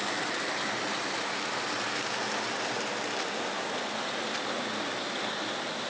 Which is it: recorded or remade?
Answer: recorded